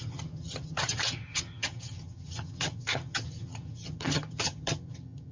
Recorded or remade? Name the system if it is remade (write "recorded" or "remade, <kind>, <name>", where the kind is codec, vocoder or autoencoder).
remade, vocoder, HiFi-GAN